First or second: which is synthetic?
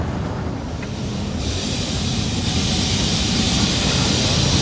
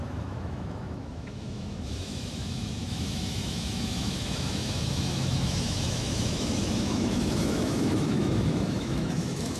second